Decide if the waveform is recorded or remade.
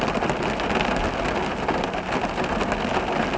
recorded